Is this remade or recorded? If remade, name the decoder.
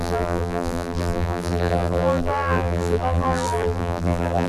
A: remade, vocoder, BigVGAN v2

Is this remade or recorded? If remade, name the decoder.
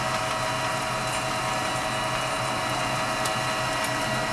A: recorded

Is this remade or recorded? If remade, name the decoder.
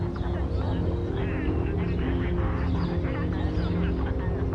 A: recorded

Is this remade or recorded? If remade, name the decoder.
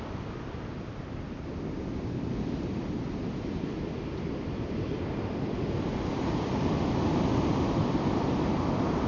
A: recorded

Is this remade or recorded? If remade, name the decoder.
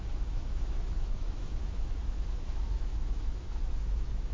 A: remade, autoencoder, DAC-VAE